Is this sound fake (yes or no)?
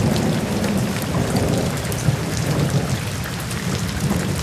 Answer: yes